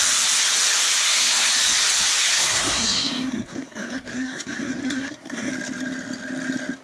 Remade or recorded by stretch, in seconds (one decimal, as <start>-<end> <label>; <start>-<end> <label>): 0.0-1.0 recorded; 1.0-1.5 remade; 1.5-2.3 recorded; 2.3-5.5 remade; 5.5-6.8 recorded